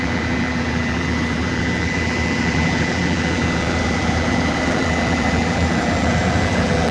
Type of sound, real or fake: fake